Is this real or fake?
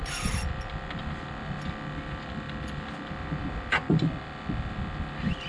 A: real